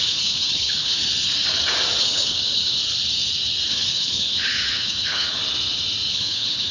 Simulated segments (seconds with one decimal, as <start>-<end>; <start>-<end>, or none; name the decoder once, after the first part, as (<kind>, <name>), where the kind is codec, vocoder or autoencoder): 0.0-1.0 (codec, HILCodec); 2.0-2.8; 3.7-5.4; 6.1-6.7